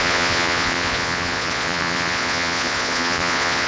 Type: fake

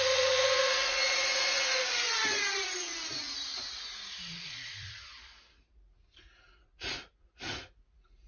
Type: fake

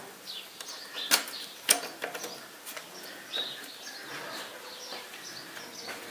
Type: real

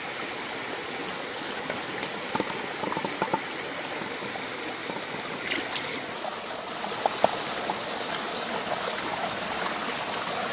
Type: real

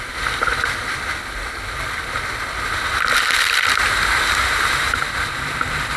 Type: real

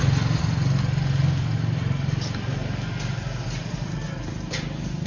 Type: real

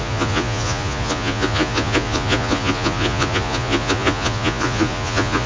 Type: fake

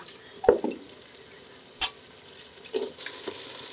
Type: real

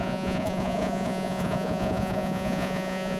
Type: fake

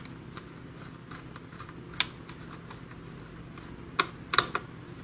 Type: real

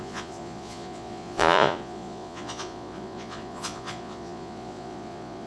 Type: fake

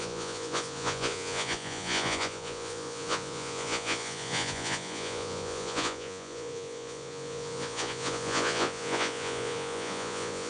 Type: fake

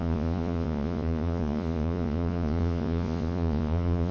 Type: fake